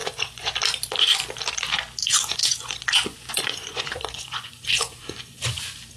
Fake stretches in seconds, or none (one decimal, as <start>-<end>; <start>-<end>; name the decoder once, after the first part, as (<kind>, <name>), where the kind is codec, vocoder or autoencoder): 0.0-0.5 (vocoder, Vocos); 2.0-5.6